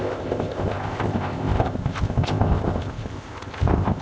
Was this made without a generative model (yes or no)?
no